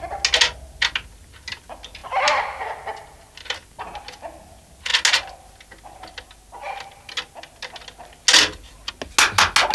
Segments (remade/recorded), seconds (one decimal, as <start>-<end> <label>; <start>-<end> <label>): 0.0-9.7 recorded